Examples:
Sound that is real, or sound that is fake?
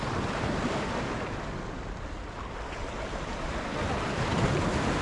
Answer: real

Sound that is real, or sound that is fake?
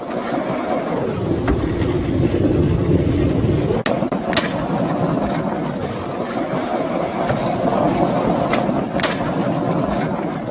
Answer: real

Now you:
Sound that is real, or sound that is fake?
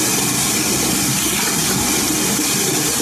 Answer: real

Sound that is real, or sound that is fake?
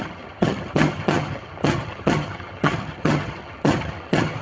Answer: fake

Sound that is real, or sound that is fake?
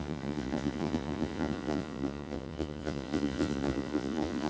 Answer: fake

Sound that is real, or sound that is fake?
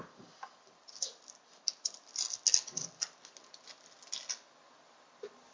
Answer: real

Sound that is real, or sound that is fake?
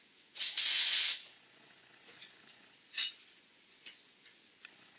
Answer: fake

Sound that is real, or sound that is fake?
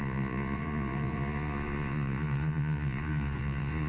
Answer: fake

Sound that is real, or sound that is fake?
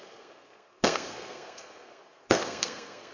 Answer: fake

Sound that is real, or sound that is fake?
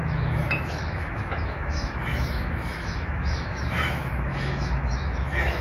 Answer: fake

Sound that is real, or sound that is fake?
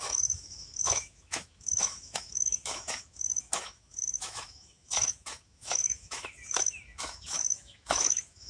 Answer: fake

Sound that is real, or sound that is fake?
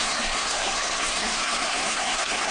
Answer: fake